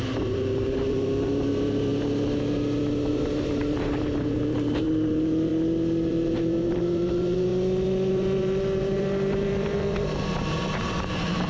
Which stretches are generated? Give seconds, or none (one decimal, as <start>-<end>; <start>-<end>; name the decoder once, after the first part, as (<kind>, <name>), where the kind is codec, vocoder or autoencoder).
0.0-1.9 (vocoder, BigVGAN v2); 3.1-5.5; 6.1-7.5; 8.1-11.5